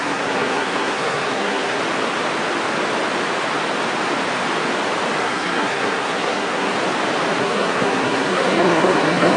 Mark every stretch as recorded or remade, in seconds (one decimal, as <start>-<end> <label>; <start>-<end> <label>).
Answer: 0.0-1.8 remade; 1.8-5.2 recorded; 5.2-6.7 remade; 6.7-7.4 recorded; 7.4-9.4 remade

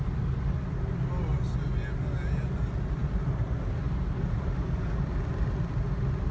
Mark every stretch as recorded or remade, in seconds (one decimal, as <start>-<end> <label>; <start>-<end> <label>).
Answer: 0.0-6.3 recorded